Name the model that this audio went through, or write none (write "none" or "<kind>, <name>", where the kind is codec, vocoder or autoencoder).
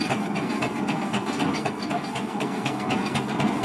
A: codec, SNAC